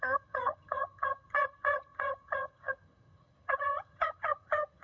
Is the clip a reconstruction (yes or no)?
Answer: yes